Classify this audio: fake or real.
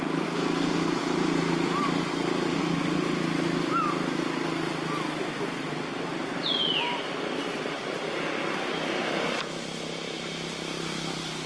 real